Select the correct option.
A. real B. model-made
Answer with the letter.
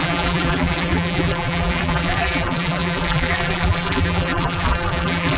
B